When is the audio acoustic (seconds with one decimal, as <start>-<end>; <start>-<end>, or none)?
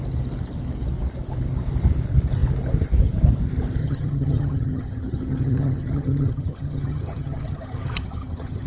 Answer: 0.0-3.8